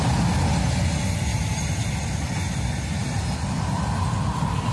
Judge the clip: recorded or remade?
recorded